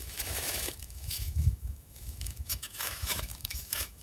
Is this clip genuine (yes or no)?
no